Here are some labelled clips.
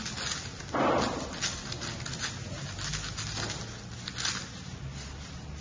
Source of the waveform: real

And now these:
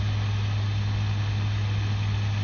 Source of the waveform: real